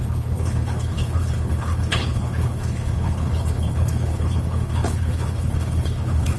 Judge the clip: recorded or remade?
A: remade